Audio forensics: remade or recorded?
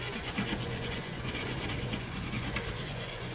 remade